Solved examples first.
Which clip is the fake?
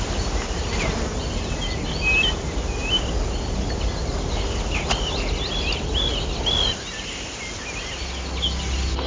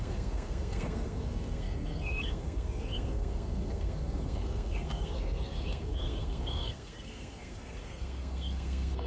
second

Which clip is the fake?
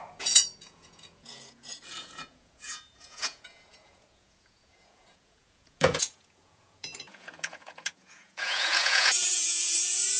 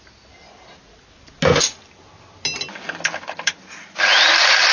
first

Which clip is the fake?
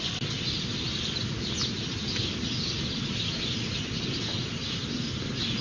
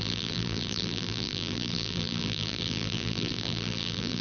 second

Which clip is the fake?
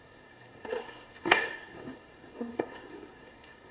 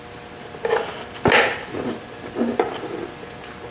first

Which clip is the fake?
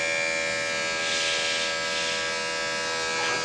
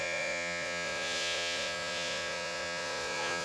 second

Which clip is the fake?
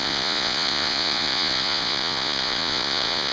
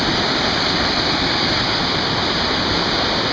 first